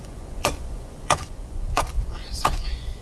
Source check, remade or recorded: remade